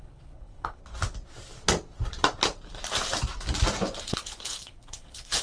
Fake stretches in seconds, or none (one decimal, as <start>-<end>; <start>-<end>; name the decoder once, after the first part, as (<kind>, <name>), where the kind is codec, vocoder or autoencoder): 0.0-0.8 (codec, HILCodec); 4.0-5.4